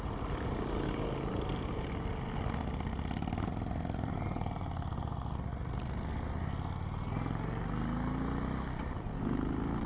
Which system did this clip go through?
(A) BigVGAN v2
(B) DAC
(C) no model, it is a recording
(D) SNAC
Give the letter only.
C